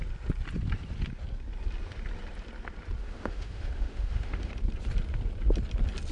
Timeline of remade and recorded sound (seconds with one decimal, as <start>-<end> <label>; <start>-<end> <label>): 0.0-3.0 recorded; 3.0-4.5 remade; 4.5-6.1 recorded